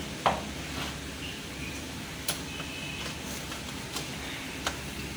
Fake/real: fake